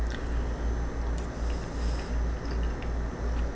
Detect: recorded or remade recorded